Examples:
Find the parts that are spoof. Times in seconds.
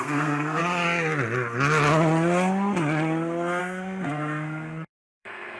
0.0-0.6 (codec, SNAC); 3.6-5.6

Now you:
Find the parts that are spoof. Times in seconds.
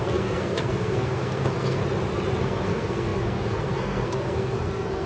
0.0-1.8 (codec, SNAC); 2.4-5.1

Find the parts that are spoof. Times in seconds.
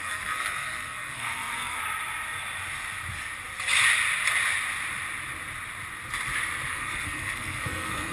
0.0-1.8 (codec, SNAC); 6.7-8.1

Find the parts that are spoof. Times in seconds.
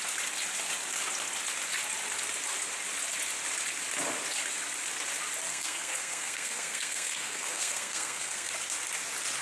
5.5-8.5 (codec, SNAC)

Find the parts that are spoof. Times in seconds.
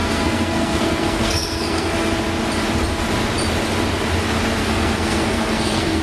0.0-2.1 (codec, SNAC); 4.6-6.0